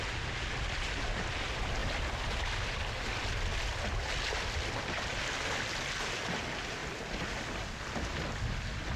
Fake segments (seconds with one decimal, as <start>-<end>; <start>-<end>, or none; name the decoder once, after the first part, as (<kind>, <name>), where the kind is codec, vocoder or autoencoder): none